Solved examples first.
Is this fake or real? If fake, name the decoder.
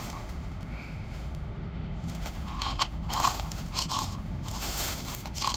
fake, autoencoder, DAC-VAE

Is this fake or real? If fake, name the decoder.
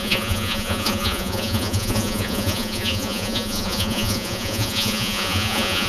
fake, vocoder, Vocos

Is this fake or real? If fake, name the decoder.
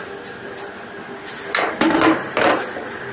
real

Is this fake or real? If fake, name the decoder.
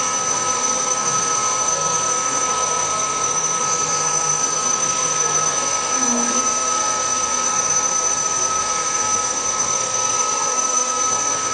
fake, codec, SNAC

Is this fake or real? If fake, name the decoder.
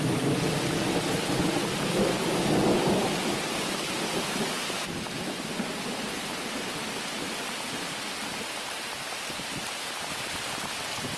real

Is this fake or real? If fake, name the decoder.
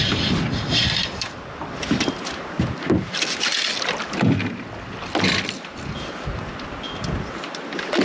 real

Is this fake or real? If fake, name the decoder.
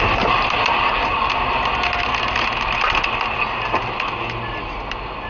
real